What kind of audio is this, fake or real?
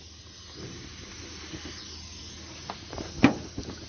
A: real